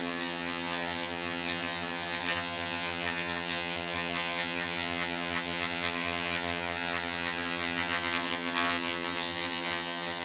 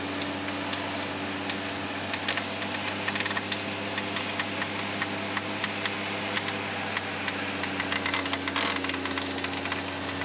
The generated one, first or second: first